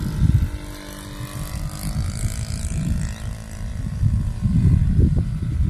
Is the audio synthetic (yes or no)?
no